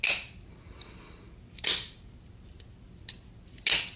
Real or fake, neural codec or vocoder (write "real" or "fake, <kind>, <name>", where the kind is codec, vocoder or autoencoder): real